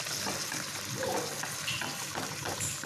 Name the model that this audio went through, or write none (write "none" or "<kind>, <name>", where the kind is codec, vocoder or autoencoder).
none